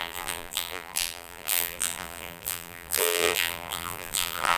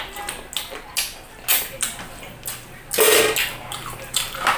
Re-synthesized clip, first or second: first